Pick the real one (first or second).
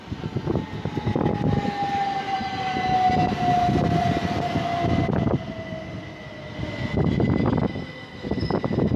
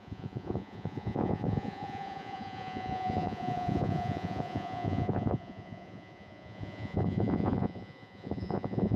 first